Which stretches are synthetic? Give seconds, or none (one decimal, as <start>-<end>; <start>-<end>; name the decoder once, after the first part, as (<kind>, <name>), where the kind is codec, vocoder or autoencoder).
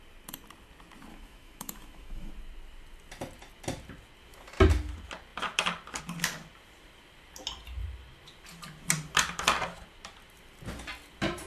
1.1-2.3 (autoencoder, DAC-VAE)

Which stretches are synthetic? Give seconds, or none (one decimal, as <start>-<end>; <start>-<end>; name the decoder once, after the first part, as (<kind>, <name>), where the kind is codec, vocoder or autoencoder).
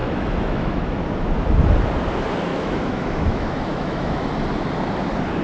0.0-1.0 (autoencoder, DAC-VAE); 2.5-4.3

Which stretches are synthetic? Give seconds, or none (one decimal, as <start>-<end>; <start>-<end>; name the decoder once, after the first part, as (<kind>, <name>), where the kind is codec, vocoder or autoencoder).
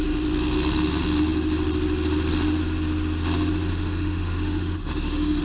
3.7-5.4 (autoencoder, DAC-VAE)